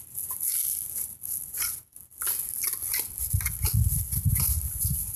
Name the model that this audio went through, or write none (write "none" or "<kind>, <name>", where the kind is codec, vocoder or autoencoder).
none